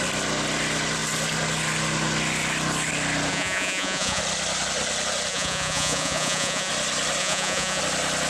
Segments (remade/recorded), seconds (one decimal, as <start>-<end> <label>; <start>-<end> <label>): 0.0-3.3 recorded; 3.3-4.2 remade; 4.2-5.3 recorded; 5.3-6.7 remade; 6.7-7.2 recorded; 7.2-7.8 remade; 7.8-8.3 recorded